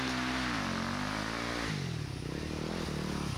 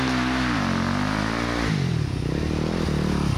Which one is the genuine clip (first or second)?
first